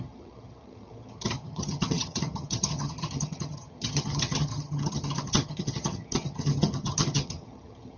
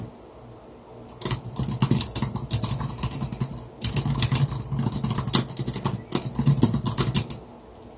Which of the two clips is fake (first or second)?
first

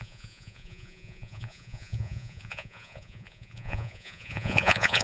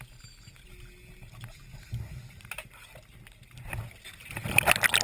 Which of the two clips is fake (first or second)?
first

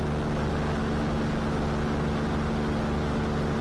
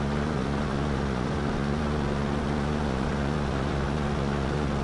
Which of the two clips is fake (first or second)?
second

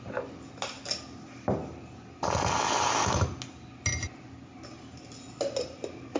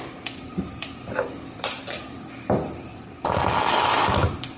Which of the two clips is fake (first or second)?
second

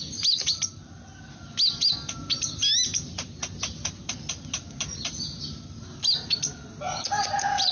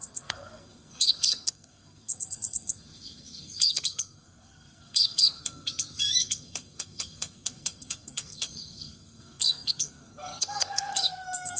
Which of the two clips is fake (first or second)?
second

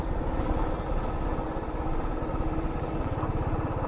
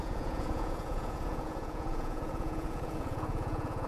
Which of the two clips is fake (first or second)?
second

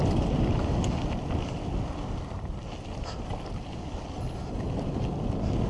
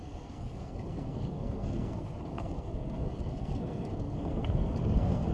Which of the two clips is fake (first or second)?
second